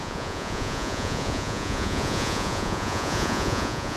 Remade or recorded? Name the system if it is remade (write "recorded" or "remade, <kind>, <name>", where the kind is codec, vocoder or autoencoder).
remade, vocoder, Vocos